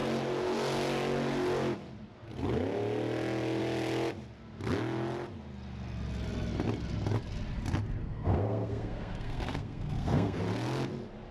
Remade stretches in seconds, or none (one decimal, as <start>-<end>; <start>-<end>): 8.0-10.4